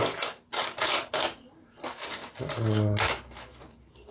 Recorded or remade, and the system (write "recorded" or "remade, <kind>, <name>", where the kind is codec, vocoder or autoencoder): recorded